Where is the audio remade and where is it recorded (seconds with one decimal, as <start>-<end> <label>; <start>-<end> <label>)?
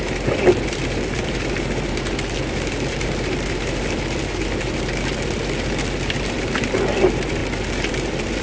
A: 0.0-7.4 remade; 7.4-7.9 recorded; 7.9-8.4 remade